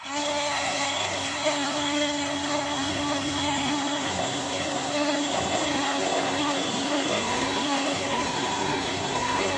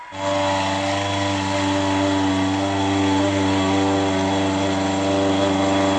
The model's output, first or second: first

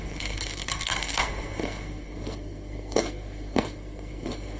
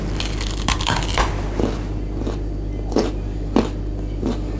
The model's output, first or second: first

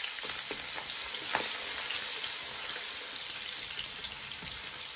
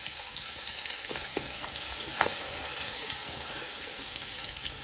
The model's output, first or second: second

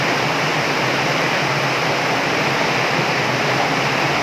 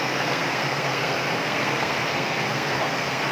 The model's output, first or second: second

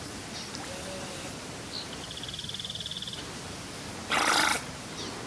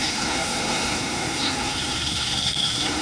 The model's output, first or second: second